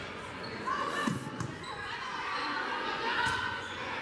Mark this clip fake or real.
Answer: fake